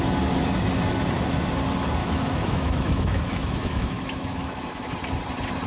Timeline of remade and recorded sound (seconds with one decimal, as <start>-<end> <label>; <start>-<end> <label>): 0.0-2.0 recorded; 2.0-4.9 remade; 4.9-5.7 recorded